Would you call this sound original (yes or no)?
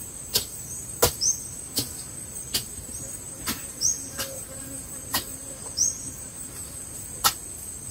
no